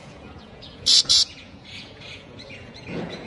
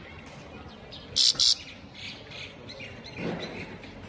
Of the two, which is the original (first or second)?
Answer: second